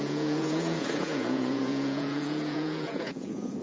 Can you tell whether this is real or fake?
fake